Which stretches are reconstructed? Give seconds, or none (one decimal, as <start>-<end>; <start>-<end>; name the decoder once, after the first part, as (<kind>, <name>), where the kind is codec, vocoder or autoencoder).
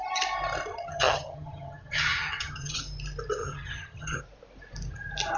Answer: 0.7-2.8 (vocoder, HiFi-GAN); 3.4-4.2